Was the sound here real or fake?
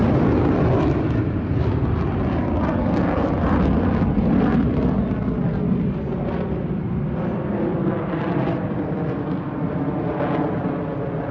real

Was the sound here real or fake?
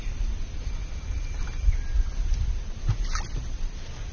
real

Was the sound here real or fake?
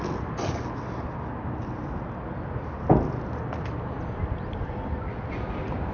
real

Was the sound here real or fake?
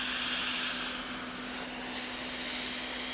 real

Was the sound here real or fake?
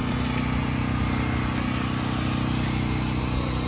real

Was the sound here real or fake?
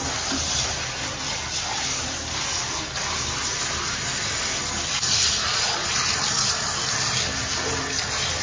real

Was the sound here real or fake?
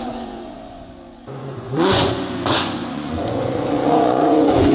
fake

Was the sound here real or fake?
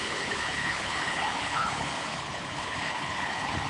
fake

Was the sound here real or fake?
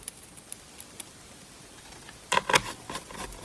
fake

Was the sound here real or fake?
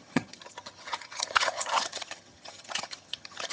fake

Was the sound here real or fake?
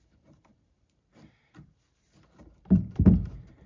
fake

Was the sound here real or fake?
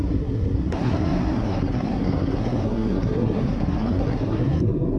fake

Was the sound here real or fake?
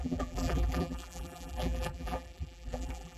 fake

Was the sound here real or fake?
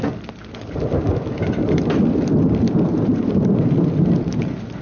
real